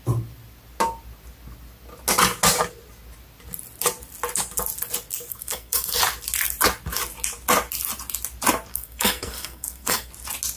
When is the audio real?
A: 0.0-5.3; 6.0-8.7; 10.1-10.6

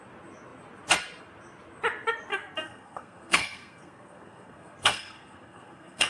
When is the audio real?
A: 0.0-2.3

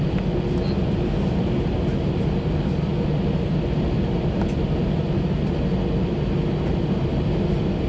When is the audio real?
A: 0.0-7.1

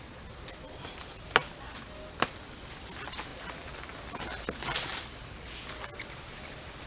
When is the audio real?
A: 0.0-6.9

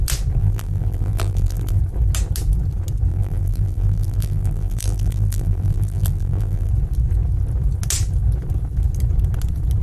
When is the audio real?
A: 0.0-0.4; 1.8-3.1; 6.7-9.8

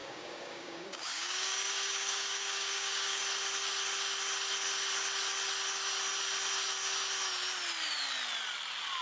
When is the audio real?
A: 3.2-9.0

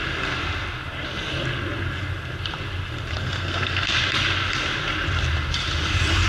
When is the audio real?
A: 0.0-3.2; 3.9-6.3